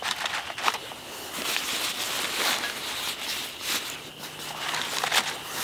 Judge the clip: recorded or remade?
recorded